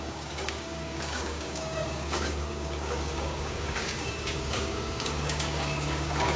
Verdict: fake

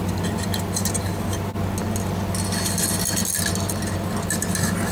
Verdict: real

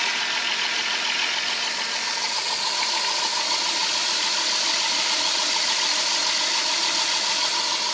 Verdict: real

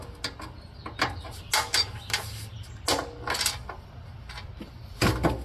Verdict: real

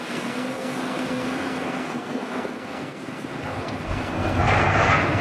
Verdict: fake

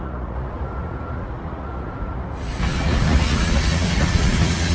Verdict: fake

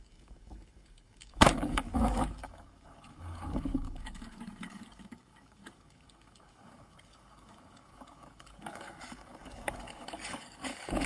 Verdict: fake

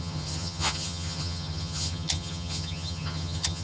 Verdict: fake